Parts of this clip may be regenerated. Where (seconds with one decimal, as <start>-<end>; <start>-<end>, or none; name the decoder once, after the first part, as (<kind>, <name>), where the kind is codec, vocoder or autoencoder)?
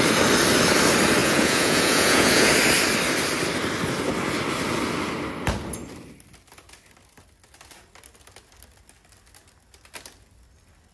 1.2-2.5 (vocoder, Vocos)